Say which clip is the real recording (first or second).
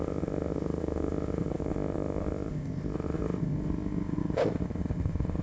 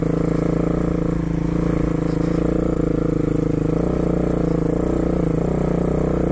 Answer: second